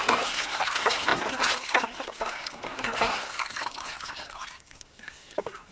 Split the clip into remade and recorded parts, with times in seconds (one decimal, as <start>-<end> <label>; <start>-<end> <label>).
0.0-5.7 remade